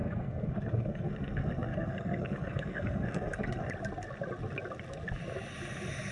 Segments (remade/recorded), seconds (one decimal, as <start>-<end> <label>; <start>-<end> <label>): 0.0-3.7 remade; 3.7-6.1 recorded